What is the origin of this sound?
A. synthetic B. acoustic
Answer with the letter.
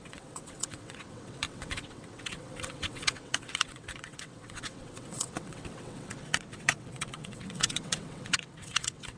A